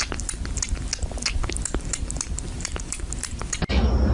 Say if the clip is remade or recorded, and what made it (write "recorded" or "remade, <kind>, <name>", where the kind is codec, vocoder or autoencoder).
recorded